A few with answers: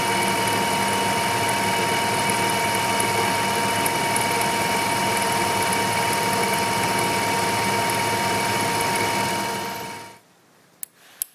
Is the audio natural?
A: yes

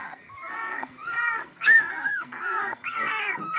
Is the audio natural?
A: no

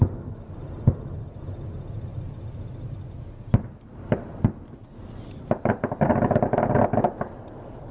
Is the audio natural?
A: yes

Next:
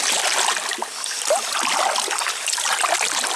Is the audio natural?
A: yes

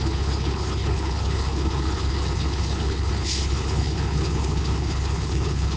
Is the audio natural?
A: no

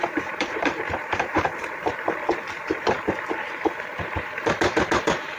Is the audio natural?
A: no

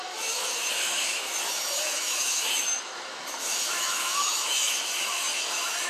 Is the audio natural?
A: no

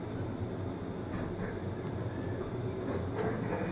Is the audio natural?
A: yes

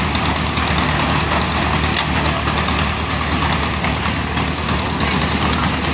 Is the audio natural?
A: yes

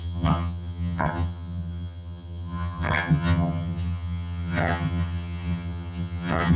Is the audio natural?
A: no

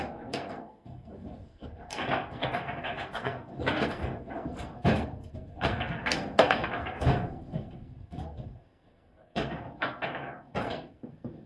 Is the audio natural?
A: no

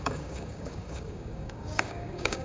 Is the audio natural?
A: no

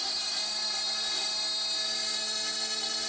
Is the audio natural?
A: yes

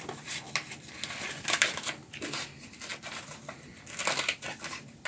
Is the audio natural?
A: yes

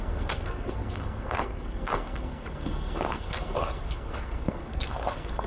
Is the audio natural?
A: no